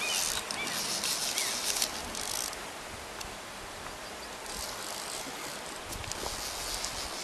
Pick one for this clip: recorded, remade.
recorded